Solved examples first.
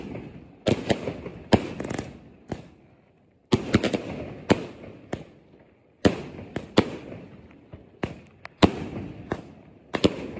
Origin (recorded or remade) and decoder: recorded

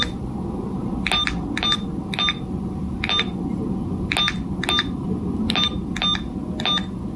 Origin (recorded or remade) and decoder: recorded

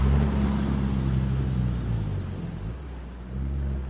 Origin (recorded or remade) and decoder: recorded